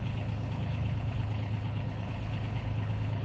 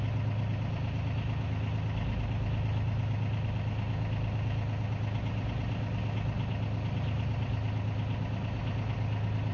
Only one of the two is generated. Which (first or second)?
first